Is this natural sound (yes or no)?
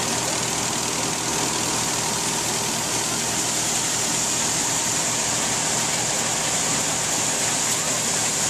yes